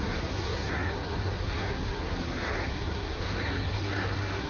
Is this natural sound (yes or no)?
no